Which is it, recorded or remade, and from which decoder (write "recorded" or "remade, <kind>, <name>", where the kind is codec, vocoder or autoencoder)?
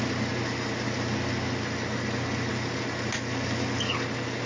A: recorded